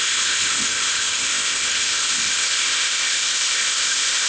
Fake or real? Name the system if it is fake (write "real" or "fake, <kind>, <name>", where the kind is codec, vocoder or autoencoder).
fake, codec, ZipCodec